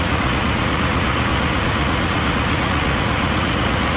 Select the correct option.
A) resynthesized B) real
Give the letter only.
A